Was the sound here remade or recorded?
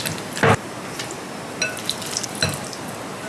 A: recorded